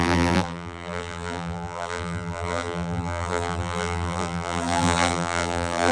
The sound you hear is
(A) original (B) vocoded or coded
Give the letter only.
B